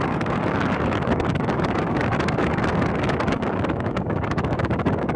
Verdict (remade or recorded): remade